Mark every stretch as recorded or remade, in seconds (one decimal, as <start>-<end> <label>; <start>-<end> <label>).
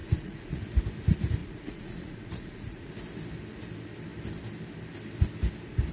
0.0-0.6 remade; 0.6-1.4 recorded; 1.4-2.9 remade; 2.9-5.9 recorded